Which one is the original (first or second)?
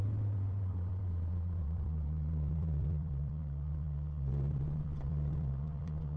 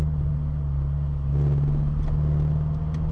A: second